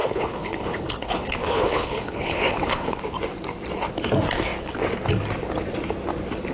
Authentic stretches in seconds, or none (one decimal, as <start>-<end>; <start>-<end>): 3.0-6.5